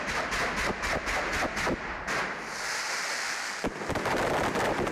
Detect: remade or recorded recorded